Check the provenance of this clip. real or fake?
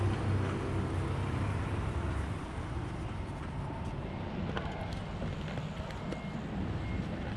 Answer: real